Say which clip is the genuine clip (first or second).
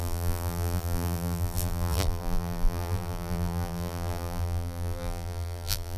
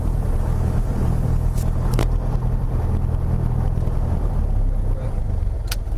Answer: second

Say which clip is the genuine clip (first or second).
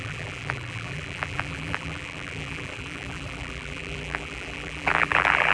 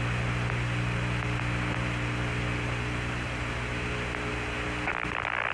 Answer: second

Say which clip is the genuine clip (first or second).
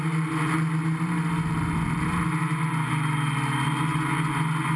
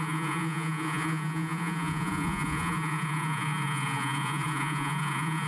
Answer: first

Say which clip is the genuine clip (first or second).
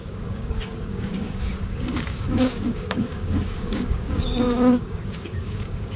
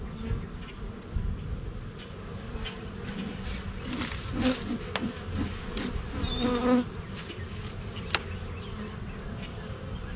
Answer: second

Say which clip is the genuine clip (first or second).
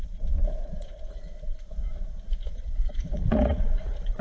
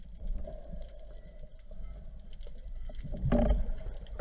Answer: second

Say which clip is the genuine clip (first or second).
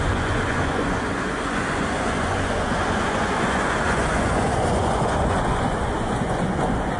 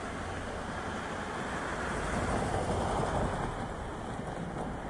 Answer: second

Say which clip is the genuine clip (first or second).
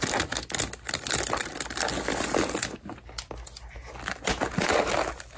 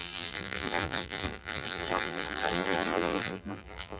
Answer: first